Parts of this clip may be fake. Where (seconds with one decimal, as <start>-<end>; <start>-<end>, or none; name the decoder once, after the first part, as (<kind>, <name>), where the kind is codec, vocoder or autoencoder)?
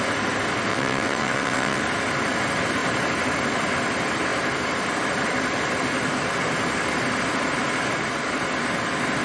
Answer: 0.7-1.8 (vocoder, WaveNeXt)